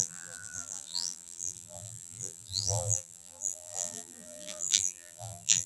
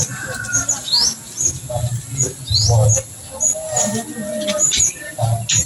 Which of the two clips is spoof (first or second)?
first